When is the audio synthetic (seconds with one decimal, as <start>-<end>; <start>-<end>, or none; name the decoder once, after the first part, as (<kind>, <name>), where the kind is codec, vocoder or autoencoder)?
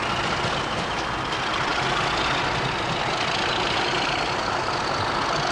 none